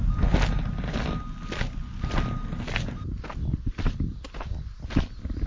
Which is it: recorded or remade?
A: recorded